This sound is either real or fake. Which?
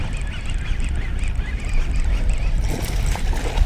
real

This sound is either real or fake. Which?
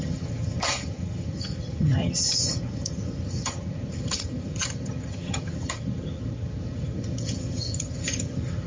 fake